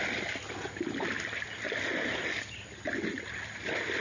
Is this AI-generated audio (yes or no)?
no